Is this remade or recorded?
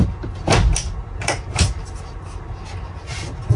recorded